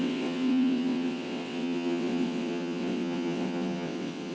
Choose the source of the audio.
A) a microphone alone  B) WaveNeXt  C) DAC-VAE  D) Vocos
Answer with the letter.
B